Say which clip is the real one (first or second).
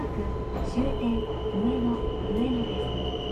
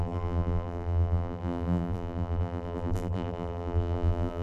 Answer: first